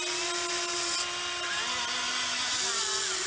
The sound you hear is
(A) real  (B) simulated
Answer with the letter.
A